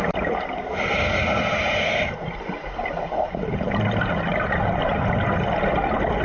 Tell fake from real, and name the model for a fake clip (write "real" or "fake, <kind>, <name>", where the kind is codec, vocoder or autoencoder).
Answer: real